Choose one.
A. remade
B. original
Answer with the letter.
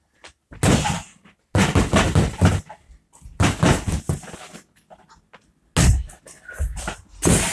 B